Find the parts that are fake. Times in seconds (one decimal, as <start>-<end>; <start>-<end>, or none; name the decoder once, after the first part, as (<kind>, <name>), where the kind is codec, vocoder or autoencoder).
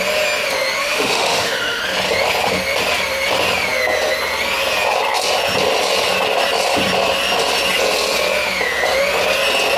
0.8-1.8 (autoencoder, DAC-VAE)